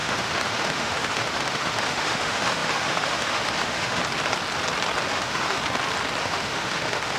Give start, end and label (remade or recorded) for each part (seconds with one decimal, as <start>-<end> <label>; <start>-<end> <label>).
0.0-4.0 remade; 4.0-5.1 recorded; 5.1-5.6 remade; 5.6-6.2 recorded; 6.2-7.2 remade